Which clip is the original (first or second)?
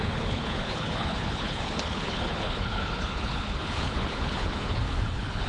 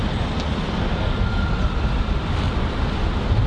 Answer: second